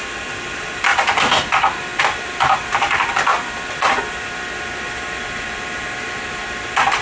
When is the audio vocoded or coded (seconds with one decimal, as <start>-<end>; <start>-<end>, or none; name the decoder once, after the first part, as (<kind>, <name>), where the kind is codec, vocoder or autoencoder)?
0.0-0.9 (vocoder, BigVGAN v2); 2.0-7.0